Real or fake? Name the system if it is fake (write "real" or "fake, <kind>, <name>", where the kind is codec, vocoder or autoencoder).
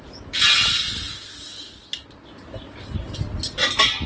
real